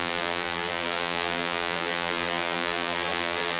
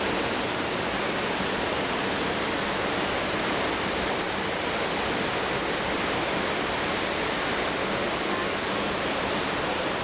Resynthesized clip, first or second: first